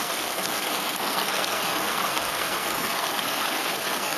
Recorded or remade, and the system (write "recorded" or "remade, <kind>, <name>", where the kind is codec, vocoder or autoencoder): remade, codec, SNAC